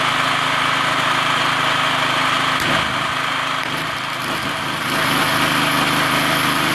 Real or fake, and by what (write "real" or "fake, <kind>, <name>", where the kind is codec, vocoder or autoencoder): real